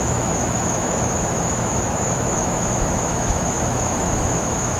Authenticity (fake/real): fake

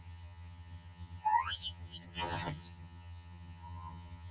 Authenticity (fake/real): fake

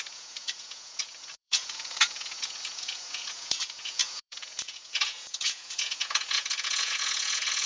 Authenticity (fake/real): fake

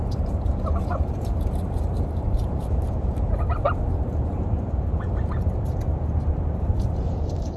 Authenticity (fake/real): fake